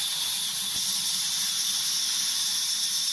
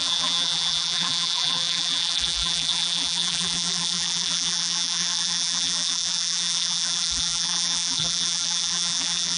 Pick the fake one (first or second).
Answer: second